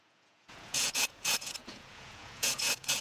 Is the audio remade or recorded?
remade